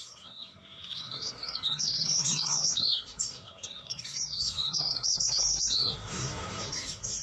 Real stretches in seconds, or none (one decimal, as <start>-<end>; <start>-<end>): none

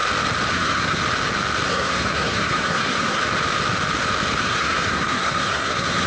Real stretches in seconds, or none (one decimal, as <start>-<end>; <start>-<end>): 0.0-0.5; 1.0-1.7; 3.2-4.4

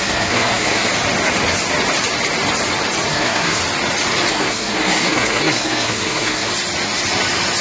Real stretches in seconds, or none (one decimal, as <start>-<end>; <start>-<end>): 0.9-3.1; 3.6-4.3; 6.5-7.6